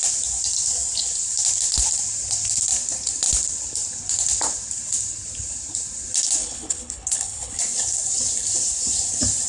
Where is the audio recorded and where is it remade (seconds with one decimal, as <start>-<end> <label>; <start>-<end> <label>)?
0.0-6.4 recorded; 6.4-7.6 remade; 7.6-9.5 recorded